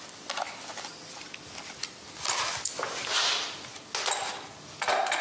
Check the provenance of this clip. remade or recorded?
recorded